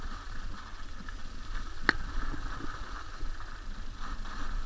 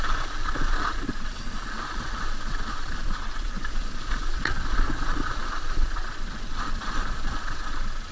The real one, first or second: first